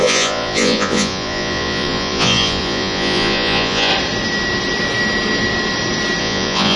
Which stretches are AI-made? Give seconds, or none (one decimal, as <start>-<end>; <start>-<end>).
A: 0.0-3.9; 6.2-6.8